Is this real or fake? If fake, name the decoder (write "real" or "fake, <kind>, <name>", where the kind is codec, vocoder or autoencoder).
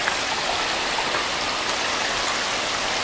real